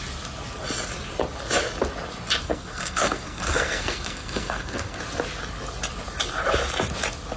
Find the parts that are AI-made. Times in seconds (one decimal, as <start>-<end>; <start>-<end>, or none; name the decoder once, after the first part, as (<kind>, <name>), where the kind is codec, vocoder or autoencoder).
2.4-5.0 (codec, SNAC)